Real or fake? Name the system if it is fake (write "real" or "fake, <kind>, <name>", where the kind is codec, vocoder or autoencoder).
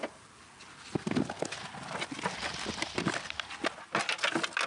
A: real